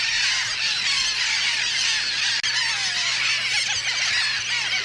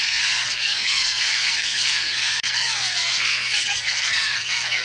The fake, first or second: second